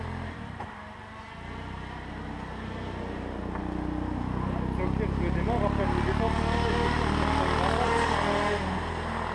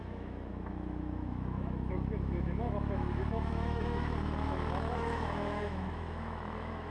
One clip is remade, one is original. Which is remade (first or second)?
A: second